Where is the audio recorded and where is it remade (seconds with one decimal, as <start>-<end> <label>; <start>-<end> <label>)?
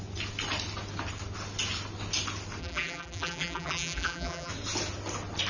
0.0-2.6 recorded; 2.6-4.5 remade; 4.5-5.5 recorded